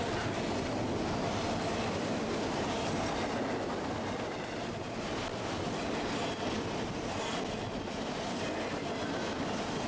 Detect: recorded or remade recorded